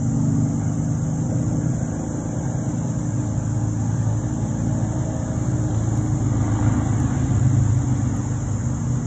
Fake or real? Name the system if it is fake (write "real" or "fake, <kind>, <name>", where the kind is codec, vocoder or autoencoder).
real